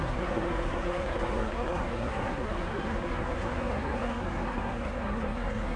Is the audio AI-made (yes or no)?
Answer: yes